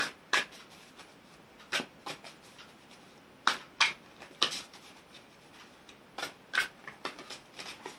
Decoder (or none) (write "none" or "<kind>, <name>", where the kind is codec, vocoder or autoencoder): none